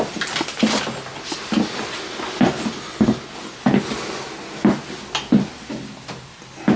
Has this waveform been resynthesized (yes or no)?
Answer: no